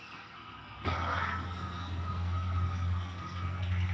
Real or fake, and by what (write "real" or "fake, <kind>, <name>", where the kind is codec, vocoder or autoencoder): fake, codec, SNAC